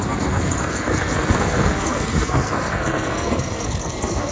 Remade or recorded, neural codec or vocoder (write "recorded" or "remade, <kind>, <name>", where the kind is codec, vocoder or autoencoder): remade, codec, SNAC